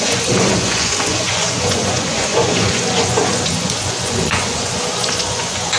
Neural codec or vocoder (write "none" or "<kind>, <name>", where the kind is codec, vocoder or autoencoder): vocoder, Vocos